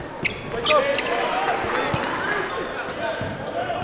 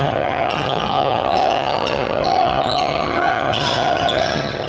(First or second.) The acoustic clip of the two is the first